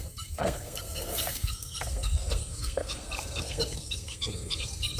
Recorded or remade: remade